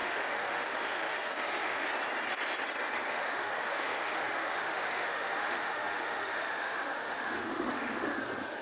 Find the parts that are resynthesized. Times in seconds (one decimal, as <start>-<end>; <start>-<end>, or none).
0.0-1.9; 3.1-8.2